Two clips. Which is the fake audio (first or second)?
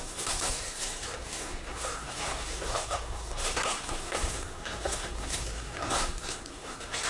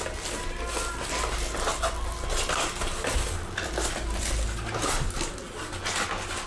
first